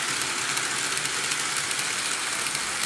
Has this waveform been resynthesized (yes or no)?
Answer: no